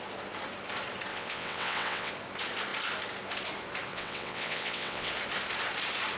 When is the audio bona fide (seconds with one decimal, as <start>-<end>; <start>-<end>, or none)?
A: 0.0-1.1; 2.1-3.9; 5.1-6.2